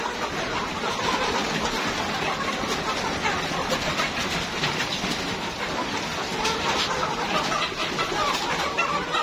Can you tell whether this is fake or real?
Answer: real